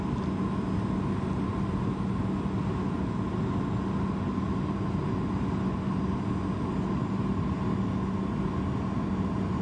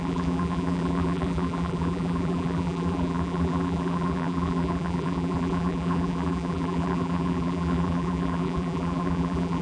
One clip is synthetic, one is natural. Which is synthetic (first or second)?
second